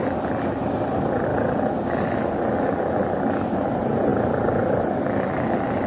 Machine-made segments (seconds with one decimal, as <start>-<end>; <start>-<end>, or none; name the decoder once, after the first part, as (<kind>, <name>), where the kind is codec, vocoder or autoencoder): none